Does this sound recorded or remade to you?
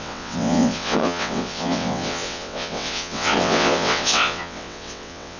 remade